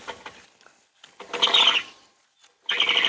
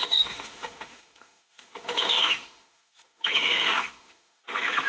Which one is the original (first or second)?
first